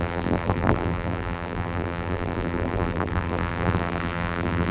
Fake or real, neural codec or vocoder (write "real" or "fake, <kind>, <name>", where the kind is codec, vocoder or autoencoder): fake, vocoder, BigVGAN v2